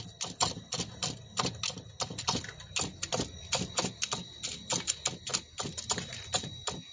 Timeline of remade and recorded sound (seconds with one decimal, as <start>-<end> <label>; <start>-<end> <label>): 0.0-6.9 recorded